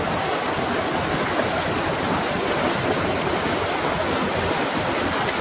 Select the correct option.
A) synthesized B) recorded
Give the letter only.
B